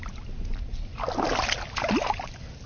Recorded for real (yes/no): yes